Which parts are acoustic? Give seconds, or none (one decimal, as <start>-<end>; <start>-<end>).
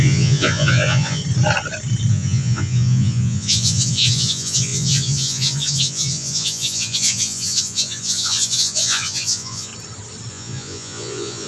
1.2-2.1; 9.7-10.3